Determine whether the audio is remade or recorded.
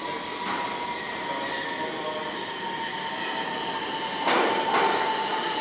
recorded